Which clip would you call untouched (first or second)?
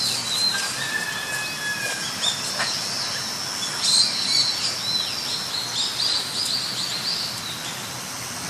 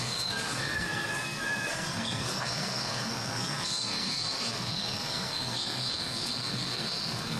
first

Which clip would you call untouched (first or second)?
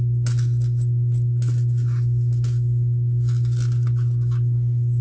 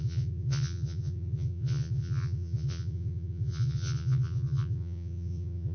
first